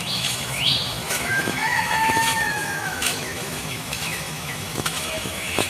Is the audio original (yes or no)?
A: no